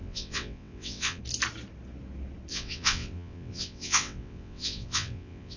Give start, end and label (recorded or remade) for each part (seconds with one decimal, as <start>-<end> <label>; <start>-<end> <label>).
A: 0.0-1.2 remade; 1.2-2.5 recorded; 2.5-5.6 remade